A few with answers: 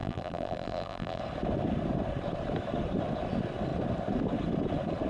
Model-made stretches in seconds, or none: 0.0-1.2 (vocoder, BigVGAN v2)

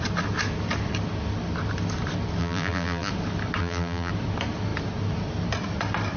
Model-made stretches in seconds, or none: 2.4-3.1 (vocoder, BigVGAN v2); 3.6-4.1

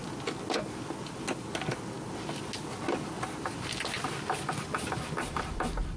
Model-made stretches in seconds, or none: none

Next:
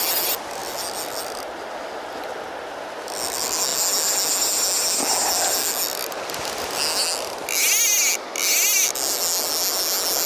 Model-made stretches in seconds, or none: none

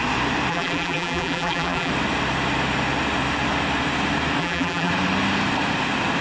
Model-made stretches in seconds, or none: 0.5-1.9 (vocoder, BigVGAN v2); 4.4-4.9

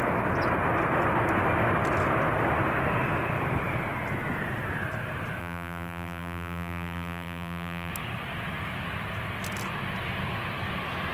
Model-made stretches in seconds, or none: 5.4-7.9 (vocoder, BigVGAN v2)